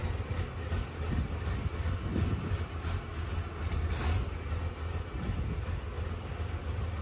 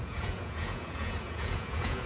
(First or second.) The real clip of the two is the first